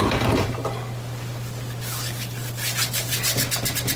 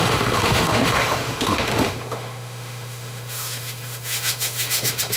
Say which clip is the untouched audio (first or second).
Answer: first